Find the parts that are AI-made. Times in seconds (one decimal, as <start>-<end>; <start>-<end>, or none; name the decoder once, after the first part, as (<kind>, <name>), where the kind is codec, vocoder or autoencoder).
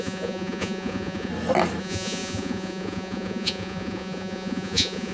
0.0-1.3 (vocoder, Vocos); 1.8-5.1